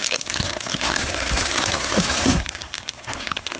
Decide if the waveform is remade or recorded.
remade